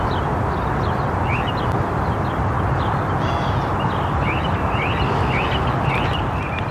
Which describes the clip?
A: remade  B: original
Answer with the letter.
B